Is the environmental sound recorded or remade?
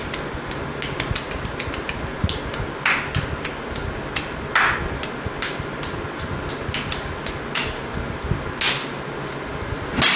recorded